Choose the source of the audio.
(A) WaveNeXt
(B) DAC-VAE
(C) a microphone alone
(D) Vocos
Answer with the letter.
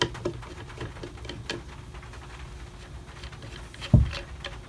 C